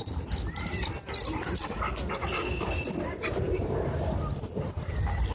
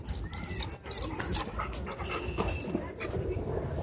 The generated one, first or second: first